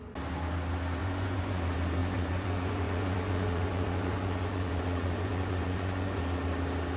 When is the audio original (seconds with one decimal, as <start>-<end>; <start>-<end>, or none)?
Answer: 0.0-1.0; 1.6-2.0; 6.2-7.0